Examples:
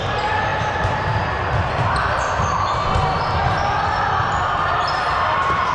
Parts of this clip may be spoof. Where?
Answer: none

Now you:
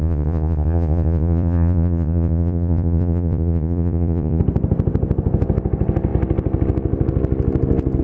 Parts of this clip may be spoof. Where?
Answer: 0.0-4.4

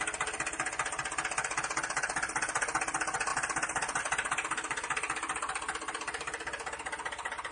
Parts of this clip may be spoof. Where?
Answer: none

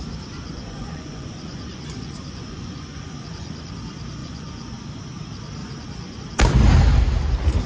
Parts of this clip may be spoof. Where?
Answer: 0.6-3.7; 4.2-4.7; 5.6-6.2

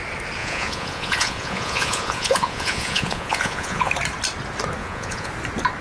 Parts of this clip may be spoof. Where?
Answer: 0.4-3.9; 4.8-5.3